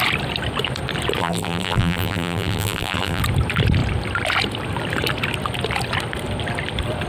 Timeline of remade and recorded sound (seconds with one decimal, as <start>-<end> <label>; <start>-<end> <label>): 0.0-1.2 recorded; 1.2-3.2 remade; 3.2-7.1 recorded